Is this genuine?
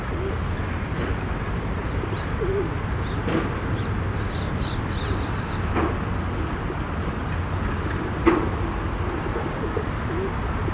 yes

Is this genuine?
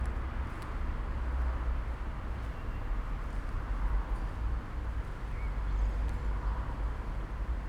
yes